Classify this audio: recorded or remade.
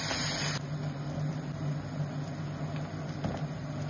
recorded